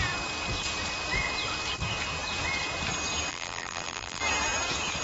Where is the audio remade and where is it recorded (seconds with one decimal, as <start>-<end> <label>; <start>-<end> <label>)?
0.0-3.3 recorded; 3.3-4.2 remade; 4.2-5.0 recorded